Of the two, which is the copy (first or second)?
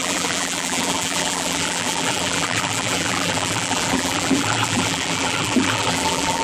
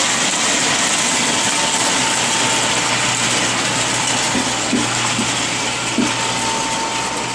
first